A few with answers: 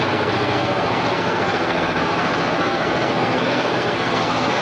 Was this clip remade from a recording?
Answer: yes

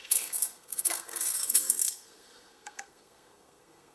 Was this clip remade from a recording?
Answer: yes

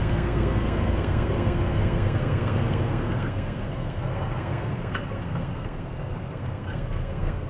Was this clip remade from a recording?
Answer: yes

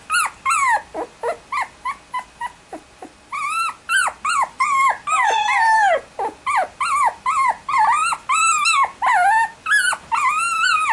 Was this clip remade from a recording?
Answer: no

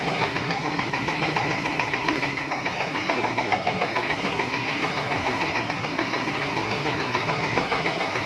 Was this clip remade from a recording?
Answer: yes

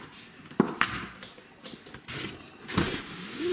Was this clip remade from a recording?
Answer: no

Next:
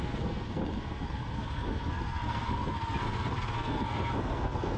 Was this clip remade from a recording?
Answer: yes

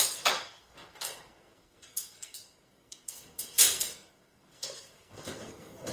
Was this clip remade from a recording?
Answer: yes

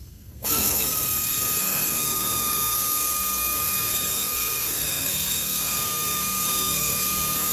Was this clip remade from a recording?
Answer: yes